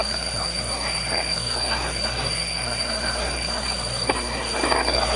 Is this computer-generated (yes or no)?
yes